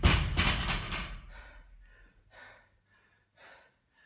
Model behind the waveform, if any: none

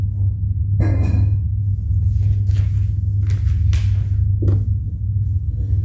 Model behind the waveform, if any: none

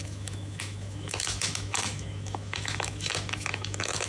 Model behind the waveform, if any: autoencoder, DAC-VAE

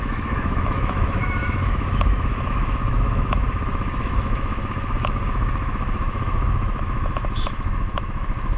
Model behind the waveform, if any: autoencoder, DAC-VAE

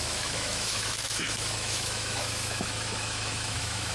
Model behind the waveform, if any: autoencoder, DAC-VAE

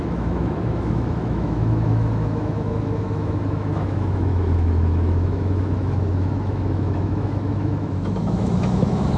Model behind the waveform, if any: autoencoder, DAC-VAE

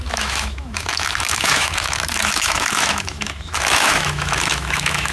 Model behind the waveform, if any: autoencoder, DAC-VAE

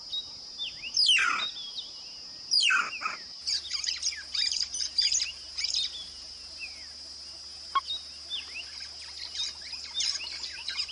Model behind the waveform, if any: none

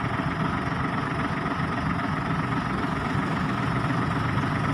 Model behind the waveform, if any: none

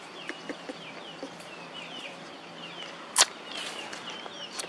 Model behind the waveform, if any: none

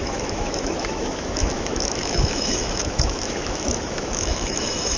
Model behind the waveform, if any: autoencoder, DAC-VAE